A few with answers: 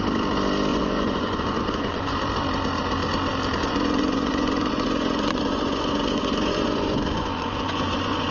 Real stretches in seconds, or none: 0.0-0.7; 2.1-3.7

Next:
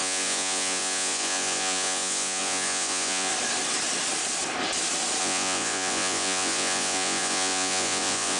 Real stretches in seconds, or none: 3.3-5.2

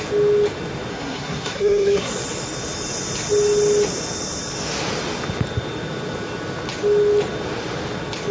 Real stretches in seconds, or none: 0.0-0.9; 2.1-8.3

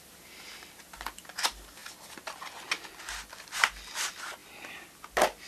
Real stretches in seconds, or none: 0.0-4.4; 5.1-5.5

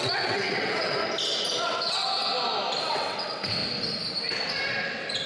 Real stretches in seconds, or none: 1.0-1.6; 2.2-2.8; 3.6-5.3

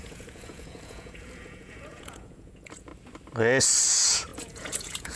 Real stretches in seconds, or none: 2.9-3.9

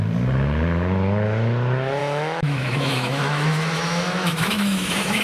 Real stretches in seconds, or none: 0.0-2.0

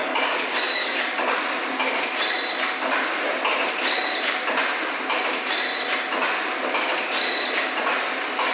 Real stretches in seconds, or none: 1.4-8.5